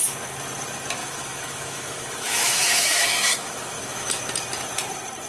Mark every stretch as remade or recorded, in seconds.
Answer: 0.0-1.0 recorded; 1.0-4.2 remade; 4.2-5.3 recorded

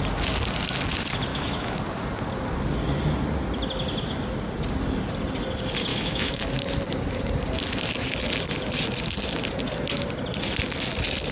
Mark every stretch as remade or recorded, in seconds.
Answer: 0.0-1.3 recorded; 1.3-1.8 remade; 1.8-5.9 recorded; 5.9-6.4 remade; 6.4-11.3 recorded

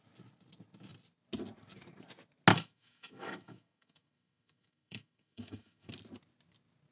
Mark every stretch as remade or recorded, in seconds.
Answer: 0.0-2.5 recorded; 2.5-5.9 remade; 5.9-6.9 recorded

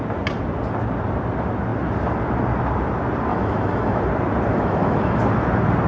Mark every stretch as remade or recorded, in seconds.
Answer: 0.0-3.3 recorded; 3.3-4.0 remade; 4.0-4.5 recorded; 4.5-5.2 remade; 5.2-5.9 recorded

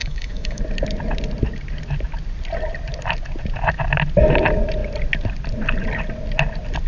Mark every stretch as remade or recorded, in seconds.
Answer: 0.0-0.6 remade; 0.6-6.9 recorded

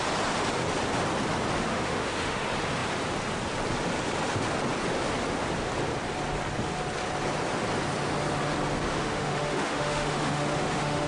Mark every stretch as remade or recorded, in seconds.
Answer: 0.0-1.6 recorded; 1.6-2.4 remade; 2.4-8.9 recorded; 8.9-11.1 remade